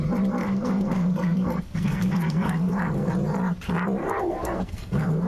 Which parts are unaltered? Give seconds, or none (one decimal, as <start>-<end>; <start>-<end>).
0.0-0.4; 3.1-4.0